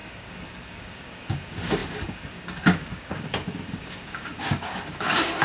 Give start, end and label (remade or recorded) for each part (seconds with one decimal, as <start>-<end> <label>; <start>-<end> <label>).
0.0-5.4 remade